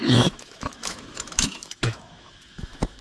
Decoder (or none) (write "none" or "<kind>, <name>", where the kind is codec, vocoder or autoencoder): autoencoder, DAC-VAE